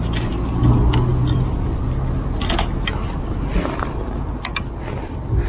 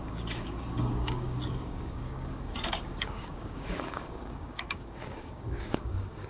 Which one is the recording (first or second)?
first